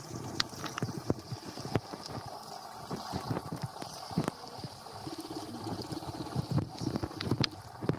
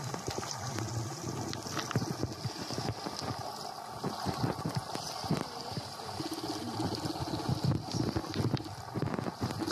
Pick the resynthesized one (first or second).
first